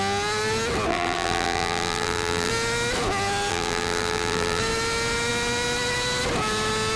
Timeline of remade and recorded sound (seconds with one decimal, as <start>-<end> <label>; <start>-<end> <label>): 0.0-0.9 recorded; 0.9-2.5 remade; 2.5-3.5 recorded; 3.5-4.6 remade; 4.6-7.0 recorded